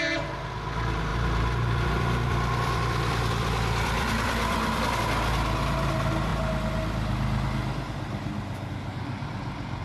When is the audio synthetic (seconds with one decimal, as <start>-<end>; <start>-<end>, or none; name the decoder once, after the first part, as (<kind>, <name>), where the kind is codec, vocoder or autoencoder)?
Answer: 1.1-5.0 (vocoder, BigVGAN v2)